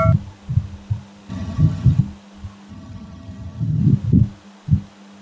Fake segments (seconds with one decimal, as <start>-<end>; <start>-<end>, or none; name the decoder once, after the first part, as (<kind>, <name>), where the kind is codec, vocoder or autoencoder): 1.3-2.0 (vocoder, HiFi-GAN); 2.7-3.8

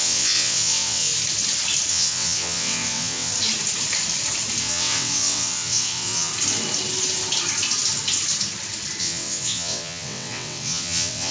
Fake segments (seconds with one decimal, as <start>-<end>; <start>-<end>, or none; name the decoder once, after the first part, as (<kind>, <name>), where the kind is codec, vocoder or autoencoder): 0.0-1.1 (vocoder, WaveNeXt); 1.9-3.3; 4.6-6.3; 9.0-11.3

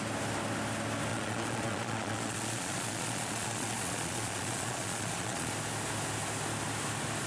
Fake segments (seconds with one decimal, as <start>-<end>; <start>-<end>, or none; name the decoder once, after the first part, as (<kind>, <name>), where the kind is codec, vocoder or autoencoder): 1.1-5.5 (vocoder, Vocos)